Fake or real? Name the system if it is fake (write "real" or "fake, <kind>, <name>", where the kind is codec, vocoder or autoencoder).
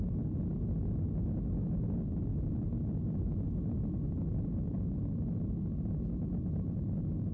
real